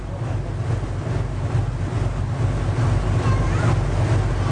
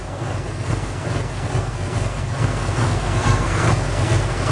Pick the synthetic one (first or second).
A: second